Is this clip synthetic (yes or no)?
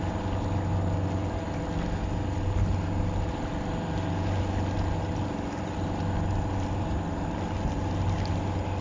no